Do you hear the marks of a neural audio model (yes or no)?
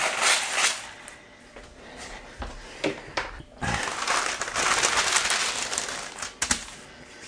no